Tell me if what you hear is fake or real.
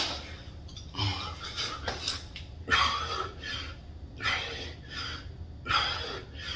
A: real